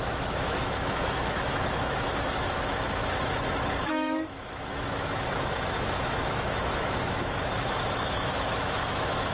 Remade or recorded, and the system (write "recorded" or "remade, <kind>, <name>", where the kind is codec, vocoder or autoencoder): remade, autoencoder, DAC-VAE